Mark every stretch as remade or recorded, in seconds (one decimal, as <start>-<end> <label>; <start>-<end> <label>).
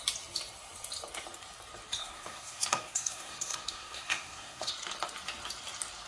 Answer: 0.0-2.0 recorded; 2.0-4.7 remade; 4.7-6.1 recorded